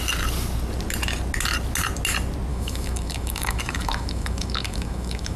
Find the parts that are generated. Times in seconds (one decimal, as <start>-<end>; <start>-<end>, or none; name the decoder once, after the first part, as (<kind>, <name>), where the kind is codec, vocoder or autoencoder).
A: 2.5-5.4 (autoencoder, DAC-VAE)